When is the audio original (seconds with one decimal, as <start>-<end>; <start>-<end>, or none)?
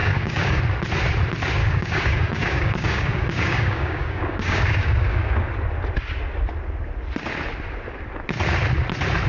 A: 0.6-1.6; 5.5-9.3